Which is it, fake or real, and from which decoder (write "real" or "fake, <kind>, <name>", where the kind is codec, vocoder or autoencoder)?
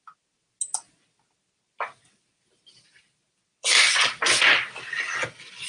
real